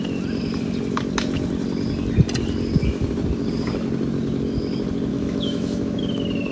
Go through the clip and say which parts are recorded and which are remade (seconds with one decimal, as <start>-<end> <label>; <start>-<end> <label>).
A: 0.0-5.1 recorded; 5.1-6.0 remade; 6.0-6.5 recorded